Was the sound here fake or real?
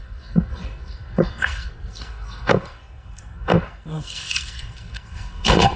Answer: fake